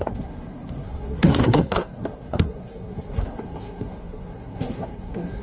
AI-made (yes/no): yes